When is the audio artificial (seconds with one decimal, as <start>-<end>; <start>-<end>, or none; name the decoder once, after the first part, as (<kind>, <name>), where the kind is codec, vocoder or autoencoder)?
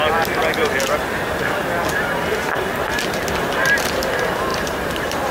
4.5-5.3 (vocoder, BigVGAN v2)